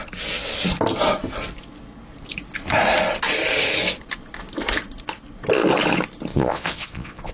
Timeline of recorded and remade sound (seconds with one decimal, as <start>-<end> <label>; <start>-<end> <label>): 0.0-6.3 recorded; 6.3-7.3 remade